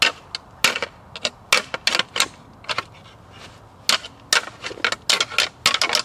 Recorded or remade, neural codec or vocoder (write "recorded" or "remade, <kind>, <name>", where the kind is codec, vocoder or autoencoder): recorded